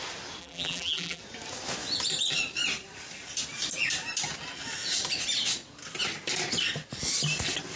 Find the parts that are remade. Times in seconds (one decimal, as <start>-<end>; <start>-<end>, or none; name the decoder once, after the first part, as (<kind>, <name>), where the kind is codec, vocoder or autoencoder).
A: 0.4-1.2 (vocoder, BigVGAN v2)